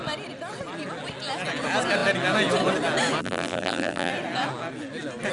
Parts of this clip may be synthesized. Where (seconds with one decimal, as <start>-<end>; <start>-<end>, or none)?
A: 3.2-4.1